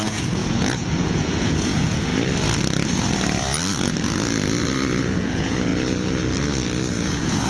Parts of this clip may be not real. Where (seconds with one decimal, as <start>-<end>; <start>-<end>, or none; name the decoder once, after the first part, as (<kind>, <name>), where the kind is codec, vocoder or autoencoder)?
0.0-2.1 (vocoder, Vocos); 5.0-5.7; 6.9-7.5